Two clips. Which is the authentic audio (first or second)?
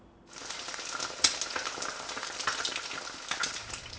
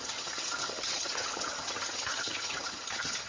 first